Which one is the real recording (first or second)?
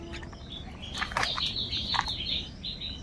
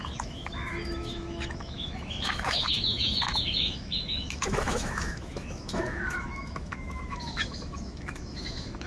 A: first